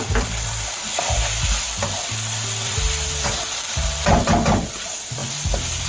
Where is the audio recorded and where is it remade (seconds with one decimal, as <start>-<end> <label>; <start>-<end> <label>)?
0.0-5.2 remade; 5.2-5.9 recorded